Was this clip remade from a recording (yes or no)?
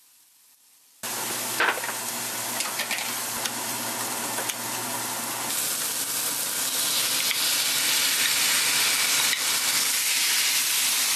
no